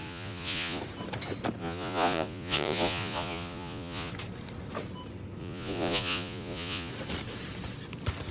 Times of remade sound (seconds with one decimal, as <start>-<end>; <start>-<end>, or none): 0.0-0.8; 1.6-4.1; 5.4-6.9